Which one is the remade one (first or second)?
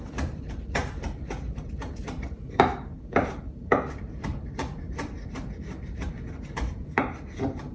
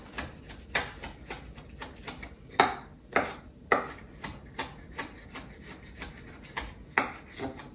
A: first